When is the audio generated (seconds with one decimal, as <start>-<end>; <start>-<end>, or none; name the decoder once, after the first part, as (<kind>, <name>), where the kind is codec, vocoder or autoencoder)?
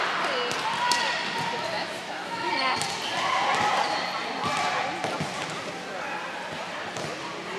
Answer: 1.8-2.5 (autoencoder, DAC-VAE)